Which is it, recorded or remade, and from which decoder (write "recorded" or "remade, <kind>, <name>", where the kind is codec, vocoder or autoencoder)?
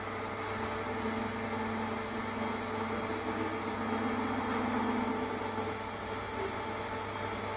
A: recorded